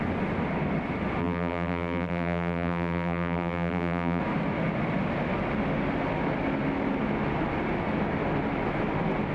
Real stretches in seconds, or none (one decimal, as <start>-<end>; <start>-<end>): 0.0-1.2; 4.2-9.3